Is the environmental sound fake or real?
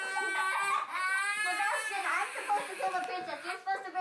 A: real